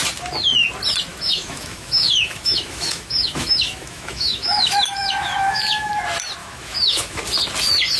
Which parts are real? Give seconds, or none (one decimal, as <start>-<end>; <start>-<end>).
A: 0.0-1.1; 5.9-6.4; 7.2-8.0